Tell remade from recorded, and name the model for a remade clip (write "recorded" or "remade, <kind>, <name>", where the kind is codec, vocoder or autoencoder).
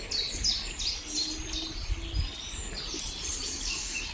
recorded